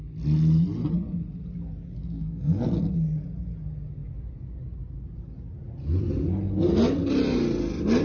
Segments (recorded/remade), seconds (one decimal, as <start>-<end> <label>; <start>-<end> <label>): 0.0-2.0 recorded; 2.0-2.6 remade; 2.6-8.0 recorded